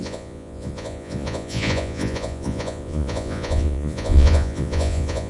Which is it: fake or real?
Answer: fake